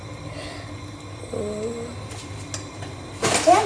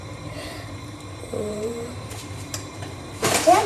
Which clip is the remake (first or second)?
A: second